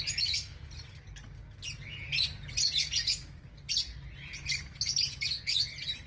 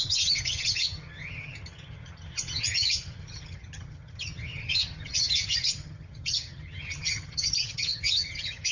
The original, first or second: first